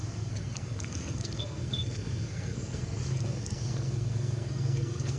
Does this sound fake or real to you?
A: fake